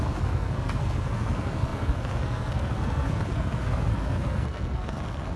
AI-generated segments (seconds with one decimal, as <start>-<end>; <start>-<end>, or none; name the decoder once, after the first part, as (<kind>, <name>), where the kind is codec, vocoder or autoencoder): 0.0-5.4 (codec, SNAC)